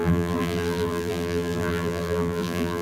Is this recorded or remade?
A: remade